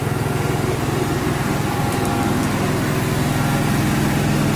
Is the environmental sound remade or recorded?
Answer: recorded